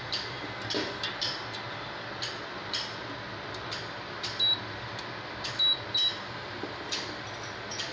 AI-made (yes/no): no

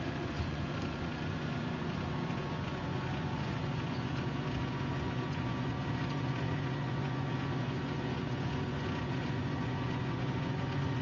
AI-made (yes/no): yes